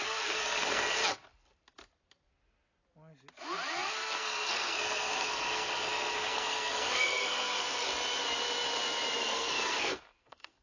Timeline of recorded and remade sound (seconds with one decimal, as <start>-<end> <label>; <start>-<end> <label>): 0.0-1.0 remade; 1.0-3.9 recorded; 3.9-7.9 remade; 7.9-9.2 recorded; 9.2-10.6 remade